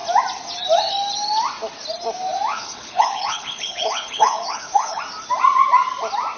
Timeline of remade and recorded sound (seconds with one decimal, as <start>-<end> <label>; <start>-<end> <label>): 0.0-2.5 recorded; 2.5-5.0 remade; 5.0-6.4 recorded

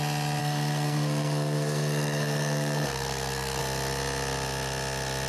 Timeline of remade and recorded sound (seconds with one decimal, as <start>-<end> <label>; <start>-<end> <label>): 0.0-0.4 recorded; 0.4-3.6 remade; 3.6-5.3 recorded

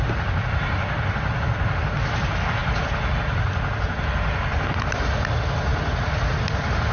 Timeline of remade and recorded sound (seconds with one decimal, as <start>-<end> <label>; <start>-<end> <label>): 0.0-6.9 recorded

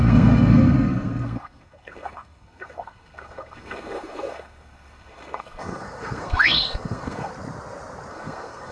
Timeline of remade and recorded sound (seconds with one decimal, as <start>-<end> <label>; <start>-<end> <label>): 0.0-7.3 remade; 7.3-8.1 recorded; 8.1-8.7 remade

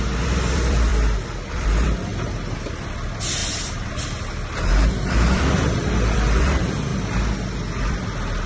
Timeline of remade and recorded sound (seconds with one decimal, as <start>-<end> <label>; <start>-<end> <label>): 0.0-0.9 remade; 0.9-1.5 recorded; 1.5-2.1 remade; 2.1-2.7 recorded; 2.7-6.9 remade; 6.9-7.9 recorded; 7.9-8.5 remade

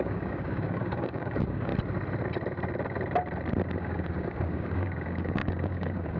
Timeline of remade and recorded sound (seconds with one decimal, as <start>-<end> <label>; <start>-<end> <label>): 0.0-1.7 remade; 1.7-3.8 recorded; 3.8-6.2 remade

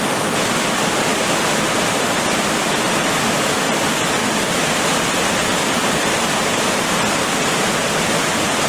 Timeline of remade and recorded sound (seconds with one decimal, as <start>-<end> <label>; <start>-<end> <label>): 0.0-4.2 remade; 4.2-5.9 recorded; 5.9-7.8 remade; 7.8-8.7 recorded